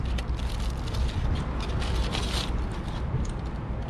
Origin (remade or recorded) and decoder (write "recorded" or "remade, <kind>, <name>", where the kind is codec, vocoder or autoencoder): recorded